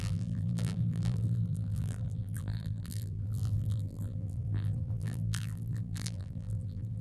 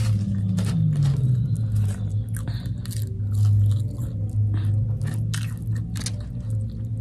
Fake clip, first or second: first